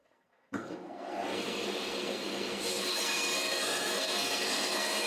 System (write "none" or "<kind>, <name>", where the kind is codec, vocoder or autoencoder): codec, SNAC